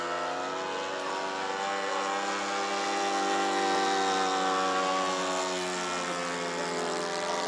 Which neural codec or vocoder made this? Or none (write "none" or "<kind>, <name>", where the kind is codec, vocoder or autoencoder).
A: none